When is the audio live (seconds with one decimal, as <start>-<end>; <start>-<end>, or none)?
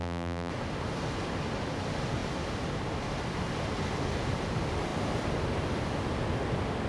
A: 0.5-6.9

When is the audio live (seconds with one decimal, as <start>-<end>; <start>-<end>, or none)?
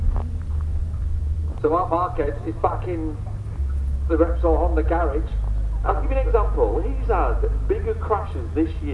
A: 0.0-0.7; 2.8-8.9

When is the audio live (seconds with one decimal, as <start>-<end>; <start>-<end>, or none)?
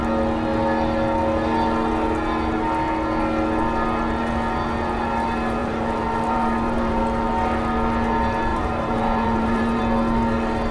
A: 0.0-5.6; 7.0-8.5; 9.8-10.7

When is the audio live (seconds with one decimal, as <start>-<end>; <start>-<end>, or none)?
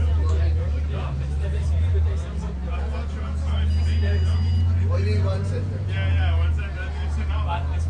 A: 2.6-7.3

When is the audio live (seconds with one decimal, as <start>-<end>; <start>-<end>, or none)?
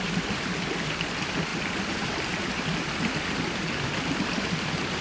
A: 0.0-5.0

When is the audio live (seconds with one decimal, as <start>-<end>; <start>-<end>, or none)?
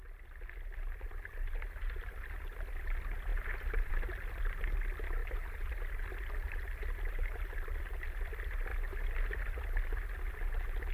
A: 0.0-10.9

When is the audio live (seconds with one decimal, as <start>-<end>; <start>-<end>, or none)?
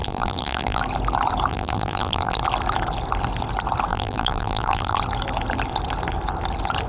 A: 0.8-1.5; 2.4-3.9; 5.0-6.9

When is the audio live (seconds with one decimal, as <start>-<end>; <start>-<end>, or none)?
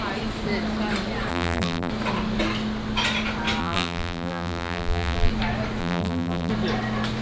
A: 0.0-1.3; 1.9-3.6; 5.3-5.8; 6.5-7.2